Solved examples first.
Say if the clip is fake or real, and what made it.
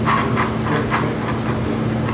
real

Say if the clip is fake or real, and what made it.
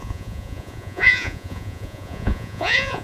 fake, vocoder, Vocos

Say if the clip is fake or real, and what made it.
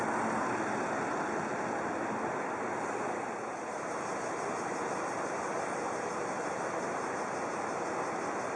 real